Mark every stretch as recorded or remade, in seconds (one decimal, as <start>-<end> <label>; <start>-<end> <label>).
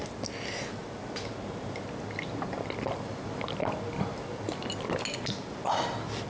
0.0-6.3 recorded